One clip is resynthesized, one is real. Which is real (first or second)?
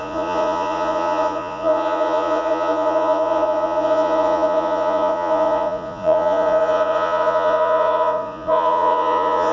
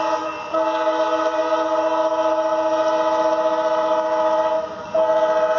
second